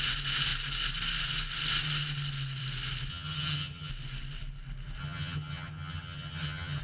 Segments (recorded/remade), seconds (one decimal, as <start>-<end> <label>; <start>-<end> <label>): 0.0-3.1 recorded; 3.1-3.9 remade; 3.9-5.0 recorded; 5.0-6.8 remade